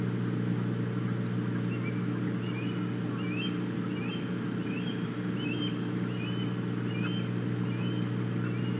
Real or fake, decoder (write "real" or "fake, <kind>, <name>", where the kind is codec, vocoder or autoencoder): real